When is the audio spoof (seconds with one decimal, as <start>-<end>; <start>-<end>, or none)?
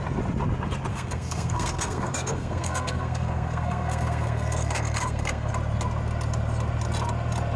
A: 0.9-5.5